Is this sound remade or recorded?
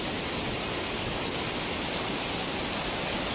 recorded